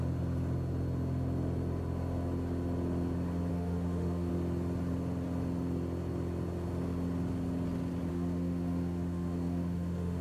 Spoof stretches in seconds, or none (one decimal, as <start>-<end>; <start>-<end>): 3.5-4.3; 8.1-10.2